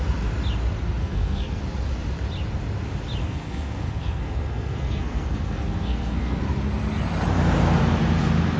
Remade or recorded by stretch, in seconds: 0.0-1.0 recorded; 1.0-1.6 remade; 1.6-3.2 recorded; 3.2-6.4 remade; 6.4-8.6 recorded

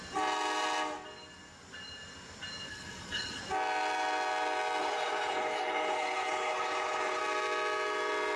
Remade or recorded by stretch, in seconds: 0.0-2.7 recorded; 2.7-3.4 remade; 3.4-4.8 recorded; 4.8-7.2 remade; 7.2-8.4 recorded

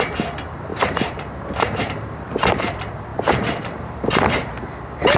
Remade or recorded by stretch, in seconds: 0.0-0.7 recorded; 0.7-2.7 remade; 2.7-3.1 recorded; 3.1-4.0 remade; 4.0-5.2 recorded

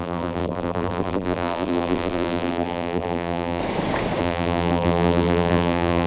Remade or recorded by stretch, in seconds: 0.0-3.6 remade; 3.6-4.2 recorded; 4.2-6.1 remade

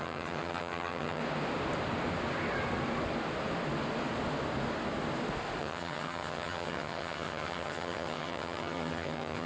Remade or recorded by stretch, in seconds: 0.0-1.2 remade; 1.2-5.6 recorded; 5.6-9.5 remade

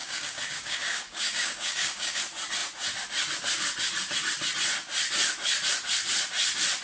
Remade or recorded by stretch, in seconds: 0.0-2.2 remade; 2.2-6.8 recorded

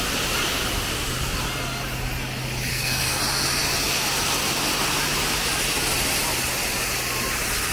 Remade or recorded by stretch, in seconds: 0.0-2.7 recorded; 2.7-3.2 remade; 3.2-7.7 recorded

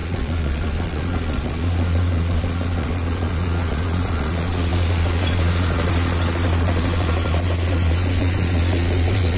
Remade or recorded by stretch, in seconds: 0.0-9.4 remade